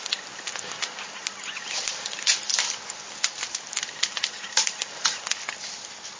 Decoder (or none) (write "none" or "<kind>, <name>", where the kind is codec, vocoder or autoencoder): none